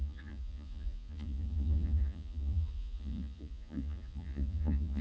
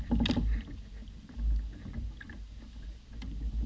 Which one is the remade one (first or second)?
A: first